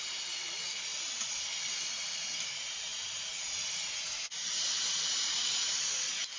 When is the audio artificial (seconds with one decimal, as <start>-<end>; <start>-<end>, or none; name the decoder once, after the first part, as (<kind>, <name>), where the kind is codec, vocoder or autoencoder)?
none